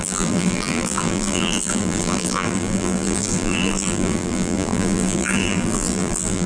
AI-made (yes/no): yes